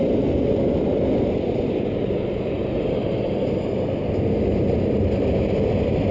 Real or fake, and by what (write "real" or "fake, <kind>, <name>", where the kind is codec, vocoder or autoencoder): real